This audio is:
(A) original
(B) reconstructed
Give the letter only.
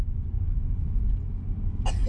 A